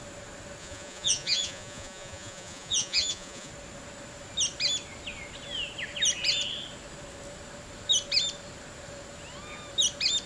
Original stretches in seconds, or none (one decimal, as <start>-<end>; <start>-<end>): 0.0-0.6; 3.5-10.3